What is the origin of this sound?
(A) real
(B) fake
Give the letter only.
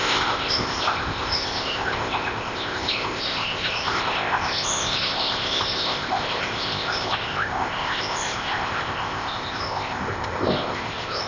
B